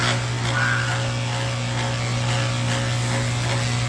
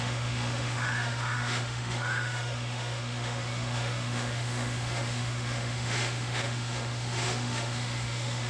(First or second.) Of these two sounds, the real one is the first